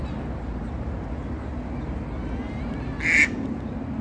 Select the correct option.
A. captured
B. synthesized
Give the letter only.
A